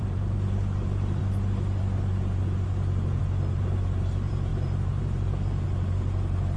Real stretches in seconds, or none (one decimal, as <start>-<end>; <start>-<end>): 1.2-3.2